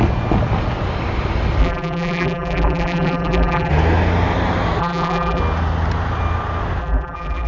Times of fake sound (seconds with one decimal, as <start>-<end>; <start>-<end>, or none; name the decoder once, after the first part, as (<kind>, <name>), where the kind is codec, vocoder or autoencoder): 1.6-3.7 (vocoder, BigVGAN v2); 4.8-5.4; 6.8-7.5

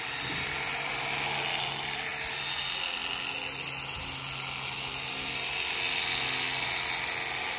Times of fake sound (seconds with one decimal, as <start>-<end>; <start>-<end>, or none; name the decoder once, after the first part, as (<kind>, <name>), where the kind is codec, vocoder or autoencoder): none